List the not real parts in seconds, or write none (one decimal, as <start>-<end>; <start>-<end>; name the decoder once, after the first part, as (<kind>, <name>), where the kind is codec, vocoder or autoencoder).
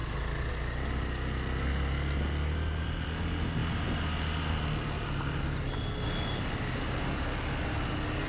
none